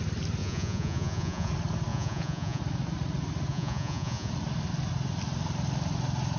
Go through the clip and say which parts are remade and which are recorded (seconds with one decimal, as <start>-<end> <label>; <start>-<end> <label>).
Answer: 0.0-0.4 recorded; 0.4-1.5 remade; 1.5-1.9 recorded; 1.9-2.6 remade; 2.6-3.5 recorded; 3.5-4.3 remade; 4.3-6.4 recorded